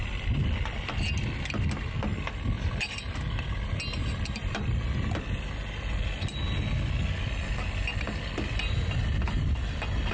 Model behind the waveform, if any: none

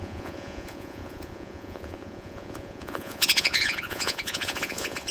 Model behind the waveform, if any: vocoder, Vocos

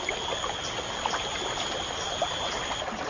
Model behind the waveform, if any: none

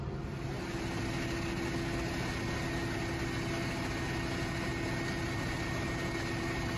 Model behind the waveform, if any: none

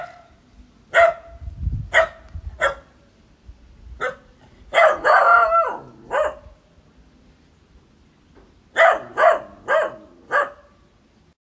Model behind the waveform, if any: none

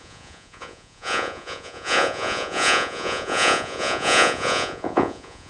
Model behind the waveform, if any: vocoder, Vocos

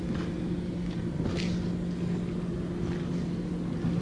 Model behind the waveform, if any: none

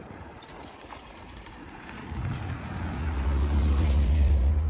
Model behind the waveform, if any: vocoder, Vocos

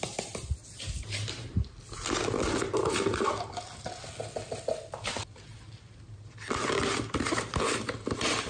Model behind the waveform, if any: none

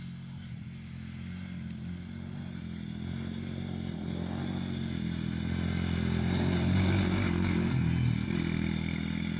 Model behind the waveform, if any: none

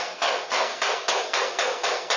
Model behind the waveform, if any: codec, SNAC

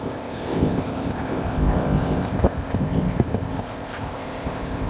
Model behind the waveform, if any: codec, ZipCodec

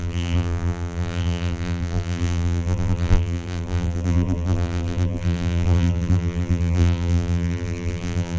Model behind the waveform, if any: vocoder, BigVGAN v2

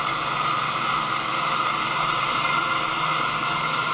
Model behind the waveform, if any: none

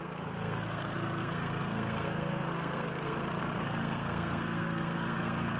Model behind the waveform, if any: codec, SNAC